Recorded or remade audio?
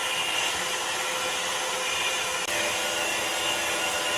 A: recorded